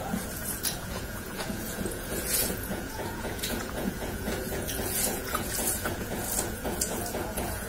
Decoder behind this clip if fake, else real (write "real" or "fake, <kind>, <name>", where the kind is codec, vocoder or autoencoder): fake, vocoder, Vocos